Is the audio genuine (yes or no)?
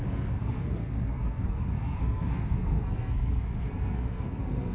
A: no